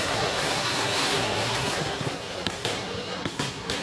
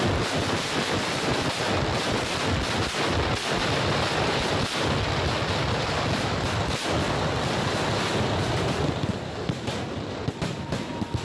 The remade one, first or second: first